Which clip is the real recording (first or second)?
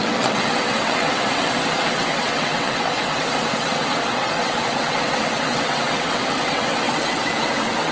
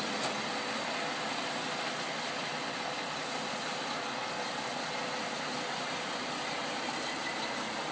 second